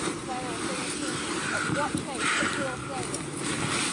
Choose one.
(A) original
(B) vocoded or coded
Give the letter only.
A